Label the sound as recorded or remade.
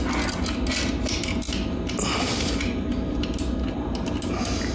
recorded